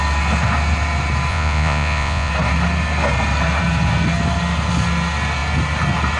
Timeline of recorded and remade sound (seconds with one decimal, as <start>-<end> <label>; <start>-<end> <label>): 0.0-1.3 recorded; 1.3-2.3 remade; 2.3-6.2 recorded